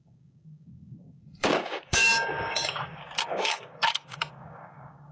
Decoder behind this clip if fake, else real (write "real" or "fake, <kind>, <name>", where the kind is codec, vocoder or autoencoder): fake, codec, DAC